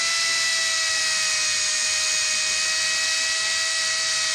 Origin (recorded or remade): recorded